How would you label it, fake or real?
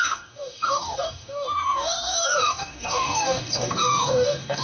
fake